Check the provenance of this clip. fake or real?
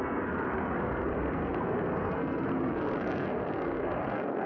fake